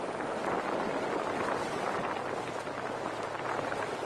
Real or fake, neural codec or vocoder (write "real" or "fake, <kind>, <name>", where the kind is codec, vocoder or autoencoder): real